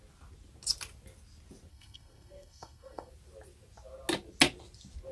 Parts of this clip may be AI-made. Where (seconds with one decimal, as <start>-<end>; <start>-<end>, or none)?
1.7-3.1